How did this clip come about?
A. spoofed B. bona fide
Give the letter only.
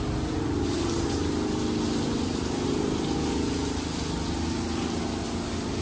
B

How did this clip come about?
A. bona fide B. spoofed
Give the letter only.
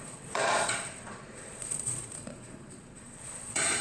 B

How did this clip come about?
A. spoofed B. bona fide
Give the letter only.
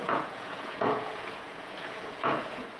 A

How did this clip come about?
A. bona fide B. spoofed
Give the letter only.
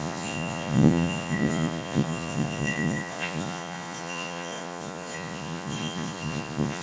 B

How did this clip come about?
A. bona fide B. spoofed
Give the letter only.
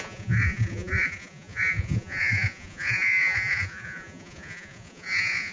B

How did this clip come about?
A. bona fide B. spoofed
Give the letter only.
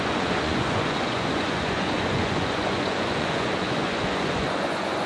B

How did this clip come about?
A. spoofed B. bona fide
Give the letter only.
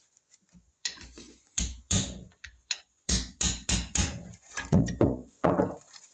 A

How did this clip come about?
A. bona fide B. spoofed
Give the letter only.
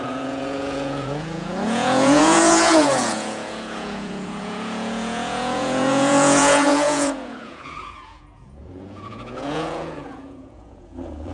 B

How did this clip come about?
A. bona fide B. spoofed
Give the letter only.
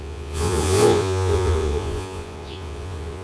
B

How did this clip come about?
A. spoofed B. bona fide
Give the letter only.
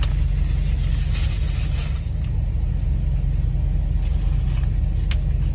B